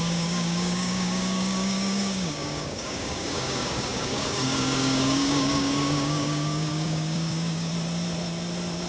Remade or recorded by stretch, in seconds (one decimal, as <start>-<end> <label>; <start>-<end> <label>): 0.0-7.7 remade; 7.7-8.9 recorded